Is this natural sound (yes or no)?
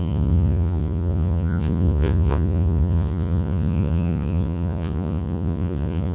no